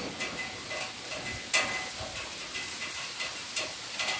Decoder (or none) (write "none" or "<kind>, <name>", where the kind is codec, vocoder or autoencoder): none